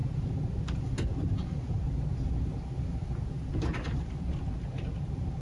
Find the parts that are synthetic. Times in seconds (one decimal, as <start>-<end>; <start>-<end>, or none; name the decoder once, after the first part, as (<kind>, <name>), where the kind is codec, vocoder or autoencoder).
none